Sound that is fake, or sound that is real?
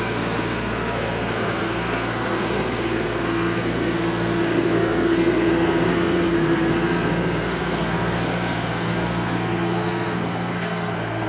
fake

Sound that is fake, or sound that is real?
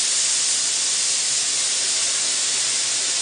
real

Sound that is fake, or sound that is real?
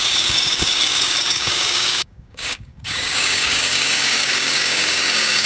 fake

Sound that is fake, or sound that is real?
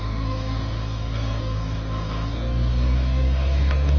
fake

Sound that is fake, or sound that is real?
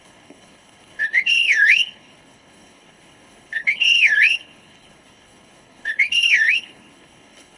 fake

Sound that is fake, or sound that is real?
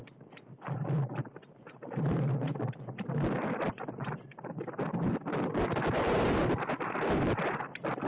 real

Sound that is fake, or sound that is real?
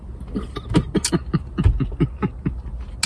real